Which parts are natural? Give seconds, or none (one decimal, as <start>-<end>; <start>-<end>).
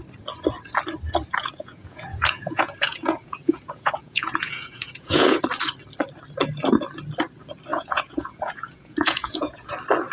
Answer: 0.0-1.4; 5.4-7.7; 9.7-10.1